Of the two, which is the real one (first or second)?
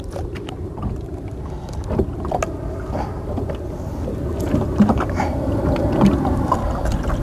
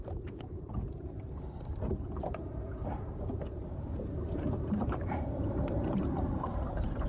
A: first